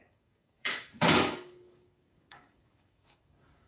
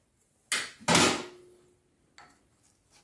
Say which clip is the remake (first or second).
first